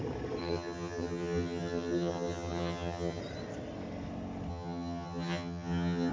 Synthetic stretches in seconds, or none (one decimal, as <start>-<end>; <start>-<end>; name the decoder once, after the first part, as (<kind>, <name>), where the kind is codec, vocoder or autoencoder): 0.4-3.2 (vocoder, HiFi-GAN); 4.5-6.1